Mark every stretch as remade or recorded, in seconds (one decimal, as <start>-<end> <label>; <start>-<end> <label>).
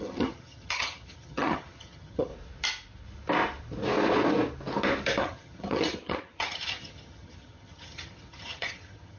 0.0-2.3 remade; 2.3-5.2 recorded; 5.2-9.2 remade